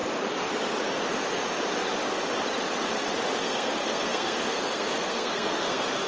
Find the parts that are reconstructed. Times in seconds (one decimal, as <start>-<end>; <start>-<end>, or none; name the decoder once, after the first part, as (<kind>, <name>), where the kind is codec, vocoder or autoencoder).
3.4-6.1 (codec, SNAC)